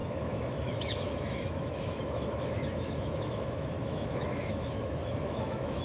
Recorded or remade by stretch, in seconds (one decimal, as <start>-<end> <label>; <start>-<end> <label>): 0.0-5.8 remade